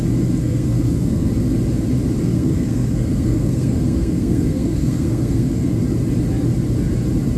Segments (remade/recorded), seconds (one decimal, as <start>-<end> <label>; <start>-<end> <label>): 0.0-0.4 recorded; 0.4-1.3 remade; 1.3-2.2 recorded; 2.2-5.8 remade; 5.8-7.4 recorded